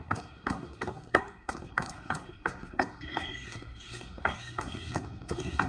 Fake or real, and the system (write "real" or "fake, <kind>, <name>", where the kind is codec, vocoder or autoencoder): fake, codec, SNAC